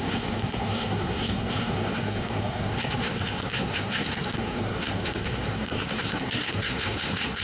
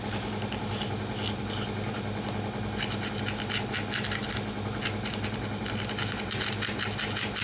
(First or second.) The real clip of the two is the second